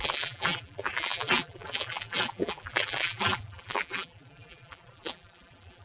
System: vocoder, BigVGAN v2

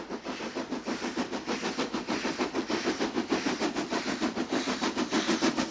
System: none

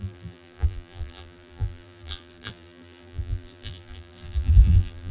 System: vocoder, BigVGAN v2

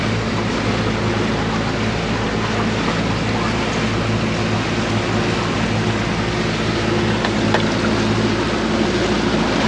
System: none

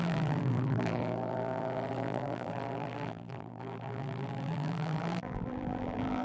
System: vocoder, BigVGAN v2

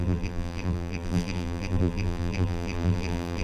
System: vocoder, BigVGAN v2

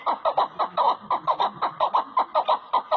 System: none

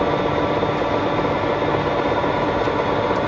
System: none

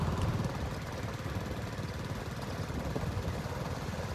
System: none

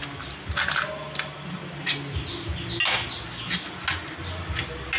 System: none